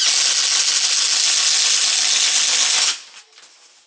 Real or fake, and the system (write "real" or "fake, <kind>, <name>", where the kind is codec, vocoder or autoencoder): real